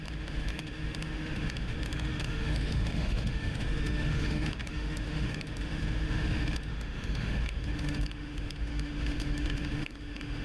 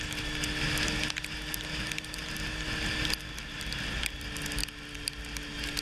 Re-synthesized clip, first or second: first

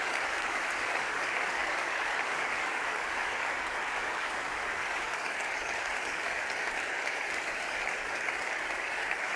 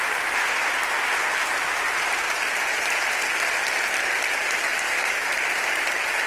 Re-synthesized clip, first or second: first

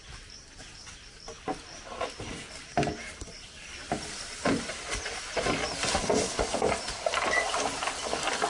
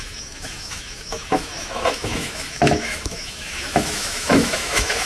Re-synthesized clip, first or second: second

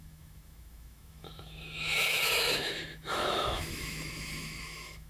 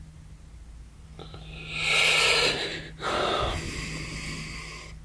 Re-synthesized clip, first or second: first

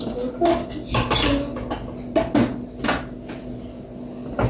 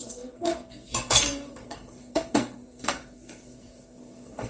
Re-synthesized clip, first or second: second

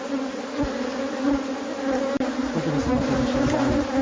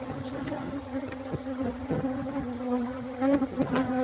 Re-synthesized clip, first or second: second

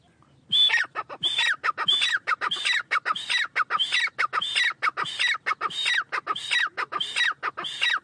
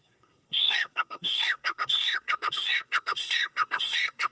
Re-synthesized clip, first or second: second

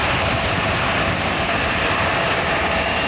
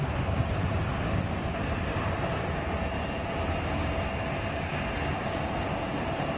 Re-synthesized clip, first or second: first